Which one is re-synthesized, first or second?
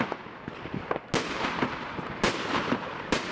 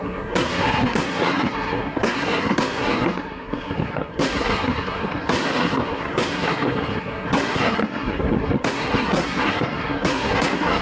second